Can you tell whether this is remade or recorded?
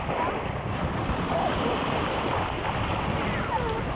recorded